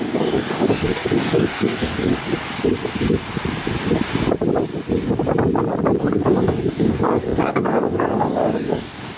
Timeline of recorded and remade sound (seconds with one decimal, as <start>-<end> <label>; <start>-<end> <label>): 0.0-2.2 remade; 2.2-6.0 recorded; 6.0-9.2 remade